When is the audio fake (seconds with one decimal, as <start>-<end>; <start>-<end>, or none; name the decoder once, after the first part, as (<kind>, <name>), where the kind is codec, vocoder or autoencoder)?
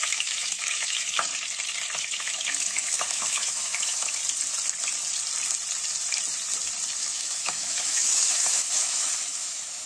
0.0-1.3 (autoencoder, DAC-VAE); 2.0-4.2; 7.0-9.9